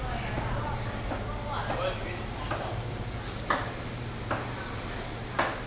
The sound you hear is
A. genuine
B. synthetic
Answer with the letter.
A